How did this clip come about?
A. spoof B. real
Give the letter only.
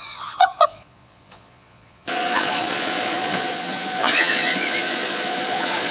A